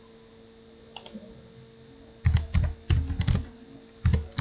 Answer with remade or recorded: recorded